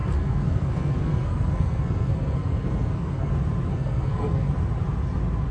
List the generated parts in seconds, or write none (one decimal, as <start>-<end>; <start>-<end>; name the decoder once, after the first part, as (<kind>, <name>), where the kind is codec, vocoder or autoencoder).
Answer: 0.0-3.3 (codec, SNAC); 3.7-4.5

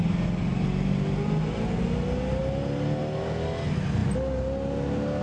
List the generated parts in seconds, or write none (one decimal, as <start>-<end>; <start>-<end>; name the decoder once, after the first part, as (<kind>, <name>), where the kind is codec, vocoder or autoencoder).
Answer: none

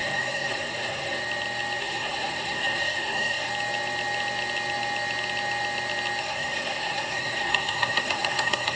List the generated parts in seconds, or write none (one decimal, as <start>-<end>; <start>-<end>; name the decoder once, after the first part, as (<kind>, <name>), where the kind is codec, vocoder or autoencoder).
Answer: 0.0-1.2 (codec, SNAC); 1.8-3.5; 6.2-8.8

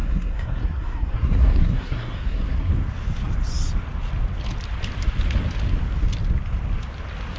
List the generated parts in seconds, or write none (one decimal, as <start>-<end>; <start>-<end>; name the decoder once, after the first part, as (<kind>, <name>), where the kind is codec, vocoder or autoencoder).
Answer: 0.0-2.7 (codec, SNAC)

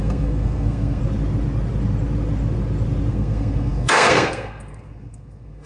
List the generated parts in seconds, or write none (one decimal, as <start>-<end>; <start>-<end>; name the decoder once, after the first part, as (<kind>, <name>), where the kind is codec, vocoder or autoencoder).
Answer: 0.0-1.0 (codec, SNAC); 3.1-5.7